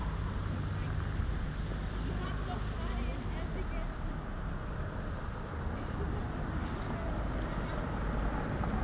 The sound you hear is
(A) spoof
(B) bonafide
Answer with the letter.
B